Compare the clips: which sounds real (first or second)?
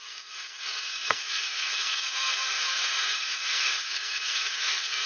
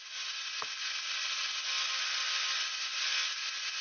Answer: second